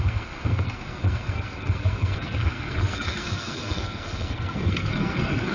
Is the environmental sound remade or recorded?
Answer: remade